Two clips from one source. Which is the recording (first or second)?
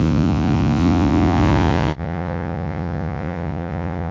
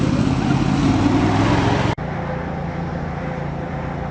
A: second